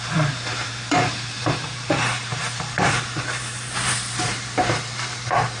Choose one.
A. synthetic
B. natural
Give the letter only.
A